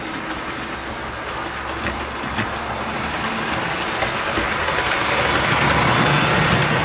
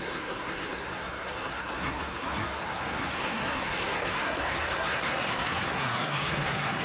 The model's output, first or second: second